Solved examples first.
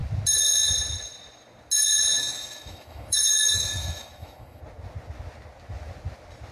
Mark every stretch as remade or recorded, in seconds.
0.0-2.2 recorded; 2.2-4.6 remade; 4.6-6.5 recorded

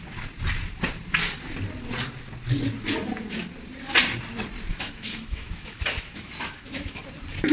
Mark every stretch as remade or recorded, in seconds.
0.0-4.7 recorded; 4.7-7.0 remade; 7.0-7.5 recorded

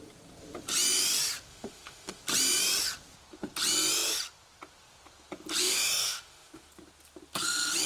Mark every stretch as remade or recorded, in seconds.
0.0-1.5 recorded; 1.5-2.2 remade; 2.2-5.6 recorded; 5.6-6.7 remade; 6.7-7.9 recorded

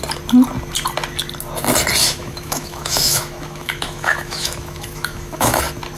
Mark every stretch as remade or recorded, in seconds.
0.0-2.0 recorded; 2.0-5.6 remade; 5.6-6.0 recorded

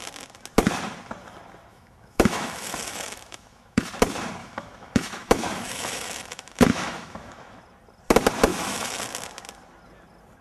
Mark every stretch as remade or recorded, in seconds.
0.0-1.7 recorded; 1.7-3.9 remade; 3.9-4.4 recorded; 4.4-7.6 remade; 7.6-8.5 recorded; 8.5-9.0 remade; 9.0-10.4 recorded